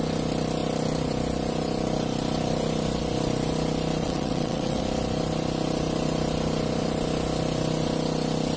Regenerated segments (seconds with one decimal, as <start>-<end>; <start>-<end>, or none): 4.0-4.8